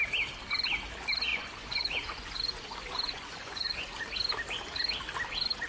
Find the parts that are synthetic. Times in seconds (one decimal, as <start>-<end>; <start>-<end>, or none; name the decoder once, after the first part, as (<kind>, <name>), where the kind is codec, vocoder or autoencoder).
1.3-4.0 (vocoder, Vocos)

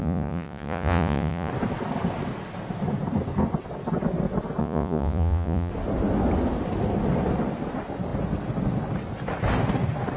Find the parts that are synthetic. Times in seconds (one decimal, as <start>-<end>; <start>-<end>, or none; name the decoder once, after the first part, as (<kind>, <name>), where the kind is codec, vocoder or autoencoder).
0.0-1.5 (vocoder, Vocos); 4.6-5.7

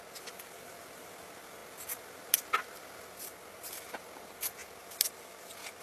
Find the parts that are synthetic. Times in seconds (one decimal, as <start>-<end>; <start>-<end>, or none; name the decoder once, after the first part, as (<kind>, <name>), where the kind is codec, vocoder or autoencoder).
none

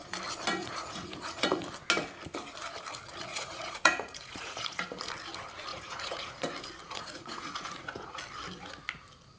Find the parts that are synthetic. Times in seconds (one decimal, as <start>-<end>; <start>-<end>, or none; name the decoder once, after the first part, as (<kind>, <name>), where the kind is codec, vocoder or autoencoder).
0.6-1.6 (vocoder, Vocos); 3.3-5.1; 5.7-6.3; 6.8-8.2